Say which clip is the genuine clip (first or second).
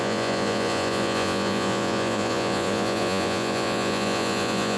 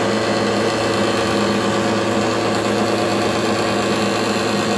second